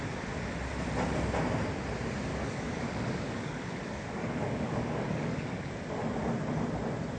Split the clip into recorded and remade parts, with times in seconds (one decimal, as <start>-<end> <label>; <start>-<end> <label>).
0.0-2.3 recorded; 2.3-5.7 remade; 5.7-7.2 recorded